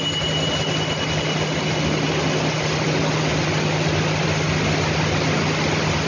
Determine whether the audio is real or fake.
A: real